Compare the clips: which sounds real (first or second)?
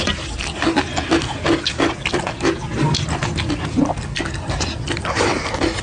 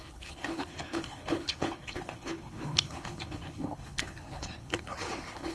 first